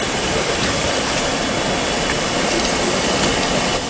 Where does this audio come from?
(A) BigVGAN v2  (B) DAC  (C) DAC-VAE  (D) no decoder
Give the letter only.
A